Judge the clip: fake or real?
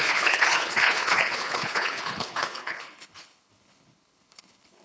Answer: fake